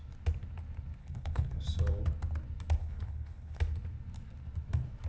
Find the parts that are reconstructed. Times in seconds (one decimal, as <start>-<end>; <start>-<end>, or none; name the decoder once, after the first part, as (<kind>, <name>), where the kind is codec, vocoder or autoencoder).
1.0-1.6 (codec, HILCodec); 2.8-3.6